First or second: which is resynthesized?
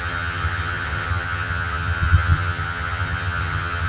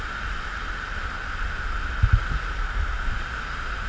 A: first